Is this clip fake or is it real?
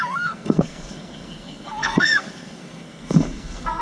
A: fake